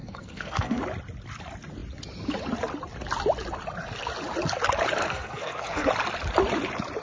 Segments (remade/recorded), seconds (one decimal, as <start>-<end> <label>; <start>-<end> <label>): 0.0-0.8 remade; 0.8-5.0 recorded; 5.0-5.9 remade; 5.9-7.0 recorded